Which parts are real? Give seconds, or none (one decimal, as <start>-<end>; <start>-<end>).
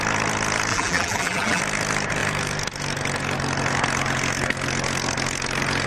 0.0-0.7; 1.6-5.9